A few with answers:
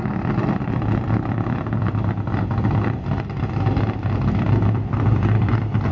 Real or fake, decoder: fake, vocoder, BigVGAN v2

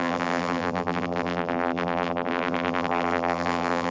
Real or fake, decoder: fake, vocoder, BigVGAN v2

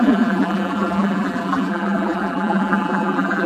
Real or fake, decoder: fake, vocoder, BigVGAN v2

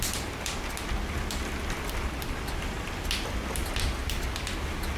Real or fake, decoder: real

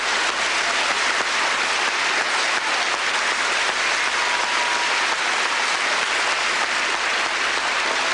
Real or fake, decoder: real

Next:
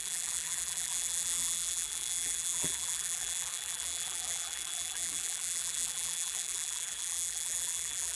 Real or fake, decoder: fake, vocoder, BigVGAN v2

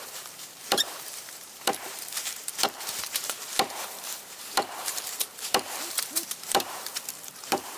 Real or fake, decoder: fake, vocoder, BigVGAN v2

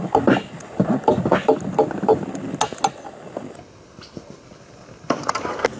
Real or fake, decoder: real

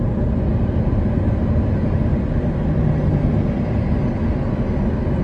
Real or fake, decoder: real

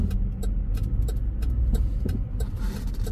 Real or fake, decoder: real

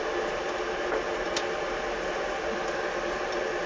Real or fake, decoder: real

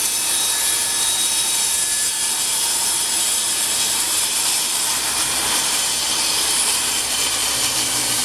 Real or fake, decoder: fake, vocoder, BigVGAN v2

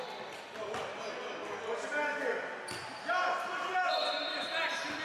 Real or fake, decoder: real